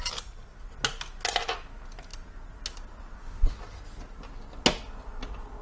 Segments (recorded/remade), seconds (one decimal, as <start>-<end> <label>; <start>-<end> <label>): 0.0-5.6 recorded

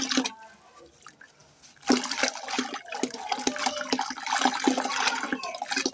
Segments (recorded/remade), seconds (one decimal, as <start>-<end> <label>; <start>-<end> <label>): 0.0-5.9 recorded

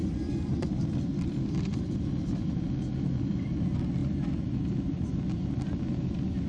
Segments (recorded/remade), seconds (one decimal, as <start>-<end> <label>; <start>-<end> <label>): 0.0-2.7 remade; 2.7-4.0 recorded; 4.0-5.2 remade; 5.2-6.5 recorded

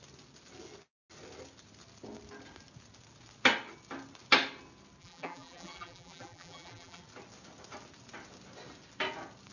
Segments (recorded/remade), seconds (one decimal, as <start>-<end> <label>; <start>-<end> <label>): 0.0-5.0 recorded; 5.0-7.0 remade; 7.0-9.5 recorded

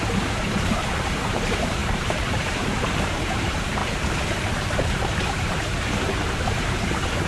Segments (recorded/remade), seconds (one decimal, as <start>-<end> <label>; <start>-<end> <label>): 0.0-3.8 remade; 3.8-4.7 recorded; 4.7-7.3 remade

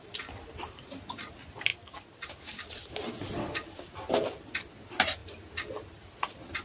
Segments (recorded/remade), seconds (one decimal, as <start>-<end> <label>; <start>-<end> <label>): 0.0-6.6 recorded

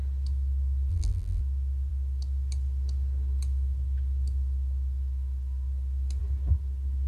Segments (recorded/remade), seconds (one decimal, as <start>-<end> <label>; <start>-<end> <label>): 0.0-0.9 recorded; 0.9-1.4 remade; 1.4-7.1 recorded